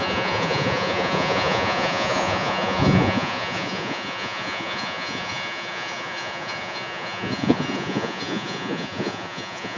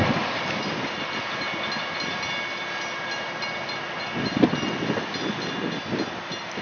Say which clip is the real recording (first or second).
second